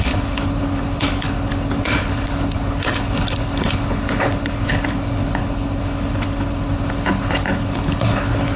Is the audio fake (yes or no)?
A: yes